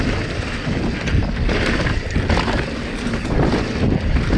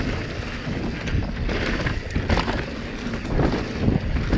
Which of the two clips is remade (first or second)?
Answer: first